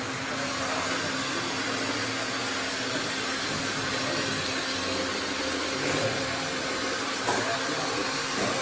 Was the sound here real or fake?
real